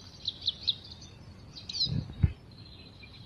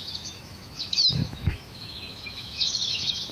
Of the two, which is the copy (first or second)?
second